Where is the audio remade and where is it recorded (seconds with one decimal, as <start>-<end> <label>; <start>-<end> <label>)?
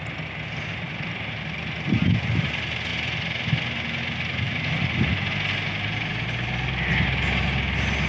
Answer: 0.0-8.1 recorded